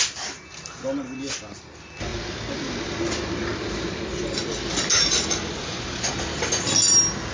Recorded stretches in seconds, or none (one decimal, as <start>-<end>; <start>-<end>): 0.0-5.4; 6.1-7.3